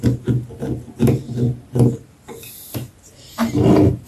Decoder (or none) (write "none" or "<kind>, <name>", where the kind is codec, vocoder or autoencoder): none